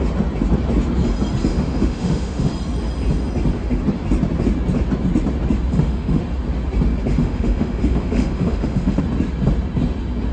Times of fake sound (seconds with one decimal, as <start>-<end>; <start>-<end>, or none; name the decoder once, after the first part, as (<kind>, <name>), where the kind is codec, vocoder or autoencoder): 1.5-2.5 (autoencoder, DAC-VAE); 5.7-6.2; 7.1-9.0